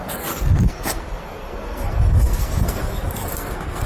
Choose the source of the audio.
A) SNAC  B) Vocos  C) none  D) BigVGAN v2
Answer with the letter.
A